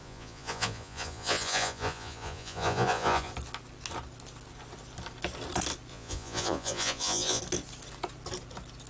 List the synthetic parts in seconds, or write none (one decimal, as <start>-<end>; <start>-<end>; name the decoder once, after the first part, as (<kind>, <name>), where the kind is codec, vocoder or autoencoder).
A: 0.0-3.3 (vocoder, Vocos); 5.9-7.4